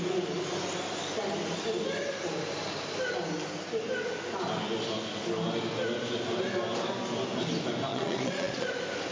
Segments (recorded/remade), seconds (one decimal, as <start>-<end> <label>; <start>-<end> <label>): 0.0-7.9 recorded; 7.9-8.7 remade; 8.7-9.1 recorded